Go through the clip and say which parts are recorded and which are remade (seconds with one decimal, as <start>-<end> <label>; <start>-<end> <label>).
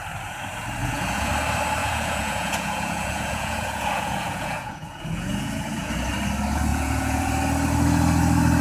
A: 0.0-0.8 recorded; 0.8-1.3 remade; 1.3-1.8 recorded; 1.8-5.9 remade; 5.9-6.7 recorded; 6.7-7.3 remade; 7.3-8.6 recorded